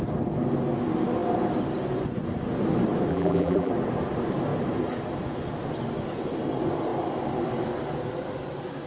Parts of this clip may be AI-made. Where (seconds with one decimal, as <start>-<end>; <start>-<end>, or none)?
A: 3.1-3.7